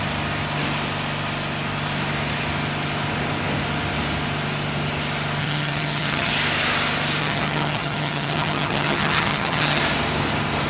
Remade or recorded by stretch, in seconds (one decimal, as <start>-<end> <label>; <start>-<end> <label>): 0.0-5.4 recorded; 5.4-6.3 remade; 6.3-7.2 recorded; 7.2-9.8 remade; 9.8-10.7 recorded

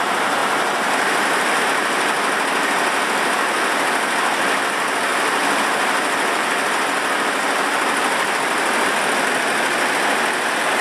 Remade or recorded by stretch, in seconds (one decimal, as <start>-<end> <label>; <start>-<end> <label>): 0.0-0.4 recorded; 0.4-1.6 remade; 1.6-10.8 recorded